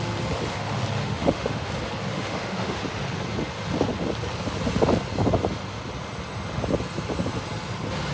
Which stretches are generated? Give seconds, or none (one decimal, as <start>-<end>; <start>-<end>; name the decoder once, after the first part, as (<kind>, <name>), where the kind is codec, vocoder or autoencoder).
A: 1.0-1.7 (autoencoder, DAC-VAE); 2.1-2.8